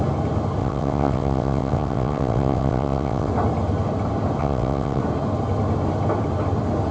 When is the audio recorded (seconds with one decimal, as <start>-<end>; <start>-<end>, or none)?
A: 0.0-0.6; 3.3-4.4; 5.0-6.9